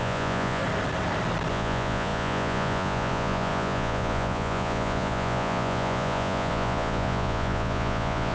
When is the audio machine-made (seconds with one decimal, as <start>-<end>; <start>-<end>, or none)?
0.0-0.6; 1.5-8.3